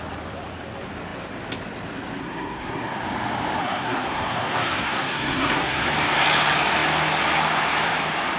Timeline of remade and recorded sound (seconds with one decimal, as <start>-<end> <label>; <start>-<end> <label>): 0.0-2.2 recorded; 2.2-3.0 remade; 3.0-3.6 recorded; 3.6-5.9 remade; 5.9-8.4 recorded